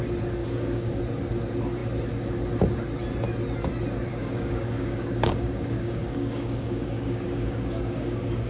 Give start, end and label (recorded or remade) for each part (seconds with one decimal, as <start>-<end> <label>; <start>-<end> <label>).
0.0-0.4 recorded; 0.4-1.0 remade; 1.0-4.1 recorded; 4.1-8.5 remade